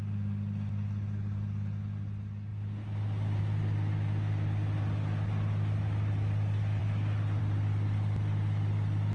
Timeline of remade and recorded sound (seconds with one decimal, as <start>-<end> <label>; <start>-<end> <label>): 0.0-9.1 recorded